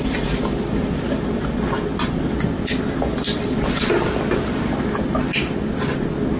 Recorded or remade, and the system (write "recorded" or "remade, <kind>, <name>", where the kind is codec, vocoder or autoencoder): recorded